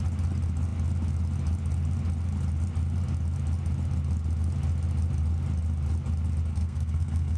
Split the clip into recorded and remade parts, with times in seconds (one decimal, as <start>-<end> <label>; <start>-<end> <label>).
0.0-6.5 recorded; 6.5-7.4 remade